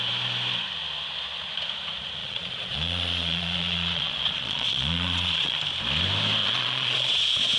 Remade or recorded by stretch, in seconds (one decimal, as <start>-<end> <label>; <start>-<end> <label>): 0.0-2.2 recorded; 2.2-5.6 remade; 5.6-6.4 recorded; 6.4-7.6 remade